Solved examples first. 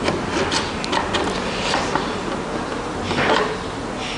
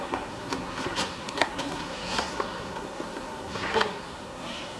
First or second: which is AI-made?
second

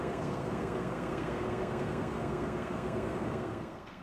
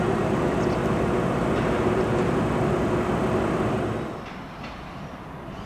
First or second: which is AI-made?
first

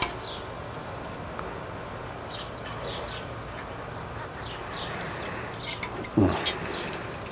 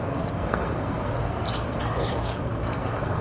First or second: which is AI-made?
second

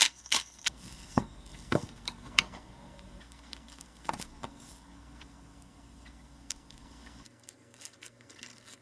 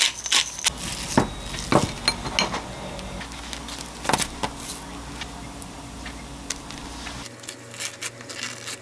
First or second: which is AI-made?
first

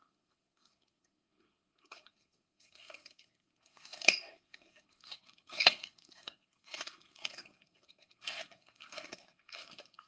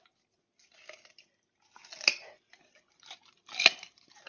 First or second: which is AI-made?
first